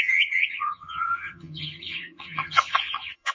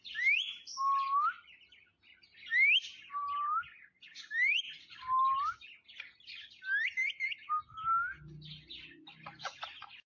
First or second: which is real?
second